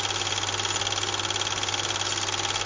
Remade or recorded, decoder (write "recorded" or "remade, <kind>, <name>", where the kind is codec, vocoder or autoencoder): recorded